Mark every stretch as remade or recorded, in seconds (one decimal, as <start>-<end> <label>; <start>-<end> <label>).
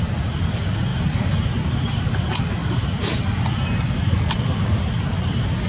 0.0-0.9 remade; 0.9-2.0 recorded; 2.0-2.6 remade; 2.6-4.3 recorded; 4.3-5.7 remade